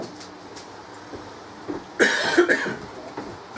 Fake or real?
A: real